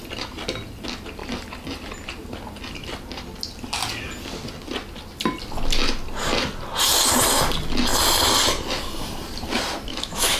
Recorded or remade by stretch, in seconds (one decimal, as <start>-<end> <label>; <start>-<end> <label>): 0.0-9.9 recorded; 9.9-10.4 remade